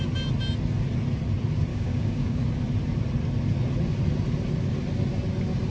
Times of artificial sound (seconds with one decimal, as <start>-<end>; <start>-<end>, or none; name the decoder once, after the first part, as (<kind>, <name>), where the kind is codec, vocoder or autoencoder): 1.7-2.4 (codec, DAC)